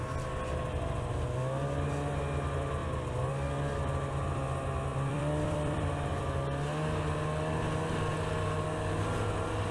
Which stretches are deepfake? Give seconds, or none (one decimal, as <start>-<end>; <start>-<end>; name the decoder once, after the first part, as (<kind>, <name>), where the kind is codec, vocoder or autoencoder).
4.9-6.2 (vocoder, BigVGAN v2)